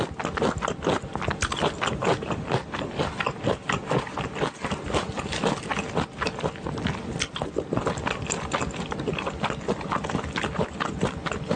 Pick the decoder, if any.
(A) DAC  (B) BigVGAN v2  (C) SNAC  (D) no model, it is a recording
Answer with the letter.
D